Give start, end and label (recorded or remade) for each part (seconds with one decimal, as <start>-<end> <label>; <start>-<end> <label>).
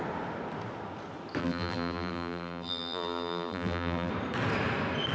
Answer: 0.0-1.4 recorded; 1.4-4.1 remade; 4.1-5.1 recorded